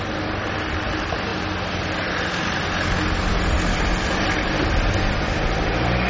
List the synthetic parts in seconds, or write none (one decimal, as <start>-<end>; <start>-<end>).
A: none